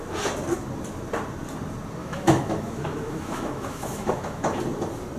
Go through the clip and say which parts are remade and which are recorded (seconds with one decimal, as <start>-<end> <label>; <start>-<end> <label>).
0.0-2.0 recorded; 2.0-4.6 remade; 4.6-5.2 recorded